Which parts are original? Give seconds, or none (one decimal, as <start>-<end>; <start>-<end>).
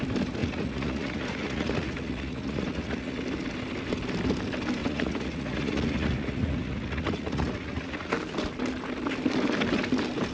0.0-0.4; 3.2-4.8; 8.1-10.3